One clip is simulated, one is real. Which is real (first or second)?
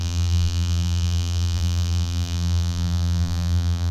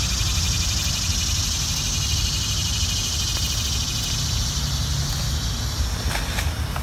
second